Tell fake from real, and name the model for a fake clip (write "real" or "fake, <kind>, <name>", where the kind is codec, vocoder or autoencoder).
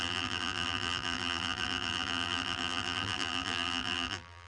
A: fake, vocoder, BigVGAN v2